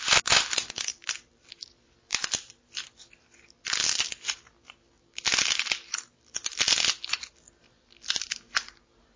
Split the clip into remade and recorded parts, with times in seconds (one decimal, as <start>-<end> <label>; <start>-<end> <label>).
0.0-9.2 recorded